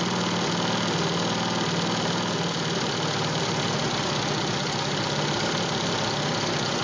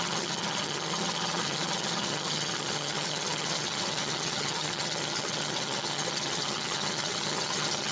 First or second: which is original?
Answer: first